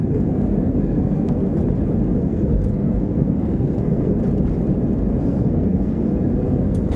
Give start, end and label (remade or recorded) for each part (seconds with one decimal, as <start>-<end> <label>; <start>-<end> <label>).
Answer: 0.0-1.5 remade; 1.5-2.2 recorded; 2.2-4.2 remade; 4.2-5.2 recorded; 5.2-7.0 remade